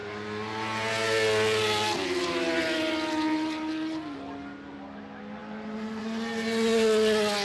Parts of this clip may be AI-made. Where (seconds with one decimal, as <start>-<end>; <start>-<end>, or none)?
none